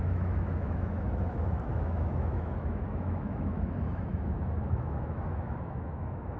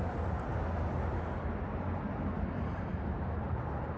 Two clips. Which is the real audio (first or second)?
second